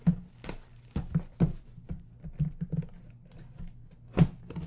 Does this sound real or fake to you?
real